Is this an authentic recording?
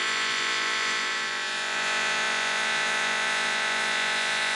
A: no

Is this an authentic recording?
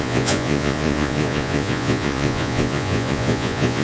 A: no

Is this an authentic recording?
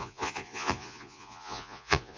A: no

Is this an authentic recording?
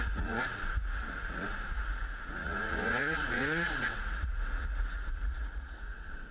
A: no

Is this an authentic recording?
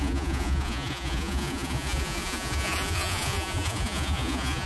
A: no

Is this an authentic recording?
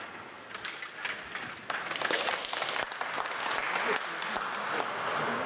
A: yes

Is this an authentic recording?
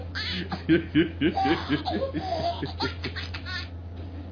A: yes